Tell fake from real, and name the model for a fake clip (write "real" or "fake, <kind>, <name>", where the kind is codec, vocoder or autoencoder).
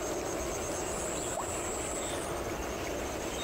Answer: real